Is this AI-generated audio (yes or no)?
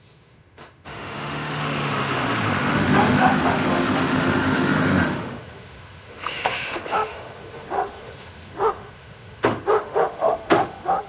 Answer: yes